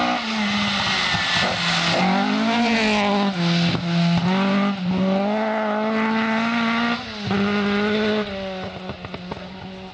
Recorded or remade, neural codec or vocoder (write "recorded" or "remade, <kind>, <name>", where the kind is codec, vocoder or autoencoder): recorded